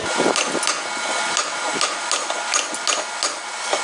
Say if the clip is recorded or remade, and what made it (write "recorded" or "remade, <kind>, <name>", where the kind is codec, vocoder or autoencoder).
recorded